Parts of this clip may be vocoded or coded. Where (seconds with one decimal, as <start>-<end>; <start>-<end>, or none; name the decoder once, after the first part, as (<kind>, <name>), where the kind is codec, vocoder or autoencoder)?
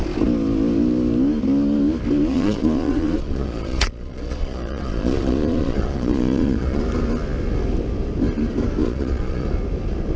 2.3-6.8 (vocoder, Vocos); 8.8-9.5